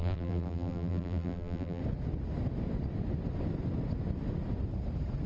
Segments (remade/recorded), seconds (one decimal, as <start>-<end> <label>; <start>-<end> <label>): 0.0-1.8 remade; 1.8-5.3 recorded